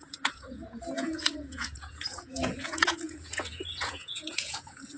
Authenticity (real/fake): fake